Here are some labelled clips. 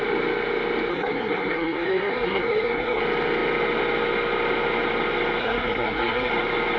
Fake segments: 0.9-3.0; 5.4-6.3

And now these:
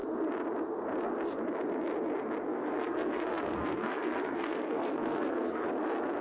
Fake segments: 2.5-5.7

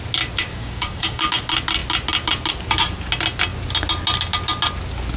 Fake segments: 0.5-1.3

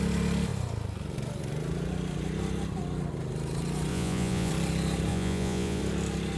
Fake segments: 3.9-4.5; 5.1-5.8